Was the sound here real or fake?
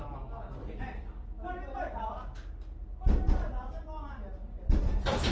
real